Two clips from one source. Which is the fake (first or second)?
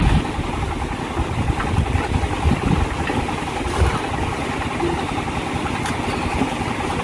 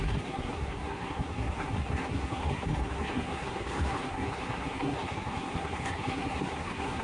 second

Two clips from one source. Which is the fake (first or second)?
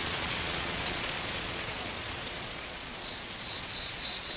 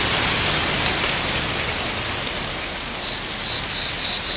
first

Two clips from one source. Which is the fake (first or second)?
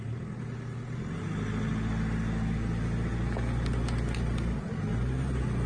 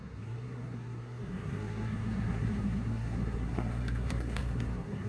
second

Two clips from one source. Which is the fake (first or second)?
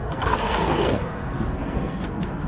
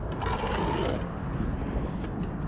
first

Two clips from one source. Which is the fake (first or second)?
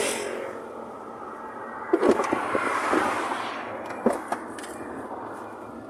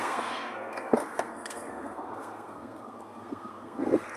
second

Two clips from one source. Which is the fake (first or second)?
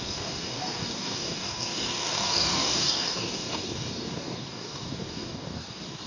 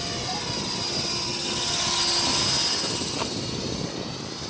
first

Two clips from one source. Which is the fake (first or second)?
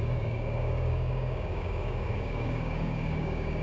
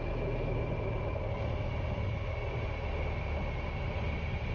first